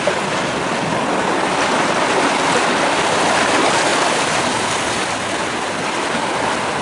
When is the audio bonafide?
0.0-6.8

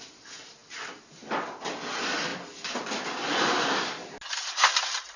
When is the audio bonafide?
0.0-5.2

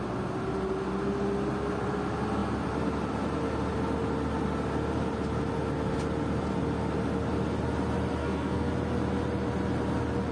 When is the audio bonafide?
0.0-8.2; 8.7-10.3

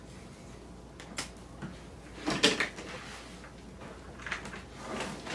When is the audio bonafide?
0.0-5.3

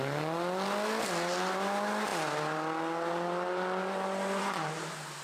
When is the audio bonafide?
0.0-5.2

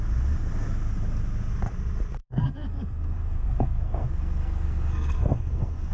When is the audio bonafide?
0.0-2.2